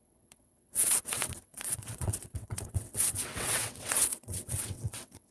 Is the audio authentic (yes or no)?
no